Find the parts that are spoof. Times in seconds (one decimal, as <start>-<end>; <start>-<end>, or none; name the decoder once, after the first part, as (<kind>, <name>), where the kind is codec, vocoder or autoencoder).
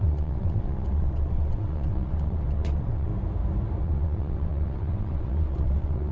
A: 0.0-3.1 (vocoder, WaveNeXt); 3.8-6.1